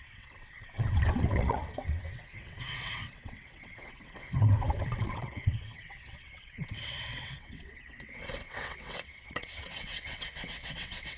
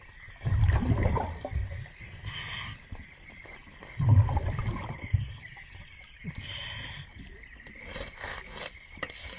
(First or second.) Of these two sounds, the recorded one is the second